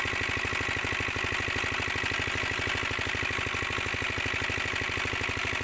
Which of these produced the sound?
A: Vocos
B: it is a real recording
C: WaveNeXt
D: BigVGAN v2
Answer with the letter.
B